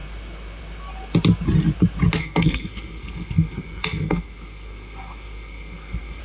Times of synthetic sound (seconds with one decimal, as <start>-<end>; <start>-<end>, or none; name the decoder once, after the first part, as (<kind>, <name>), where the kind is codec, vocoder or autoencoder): 2.2-6.2 (codec, SNAC)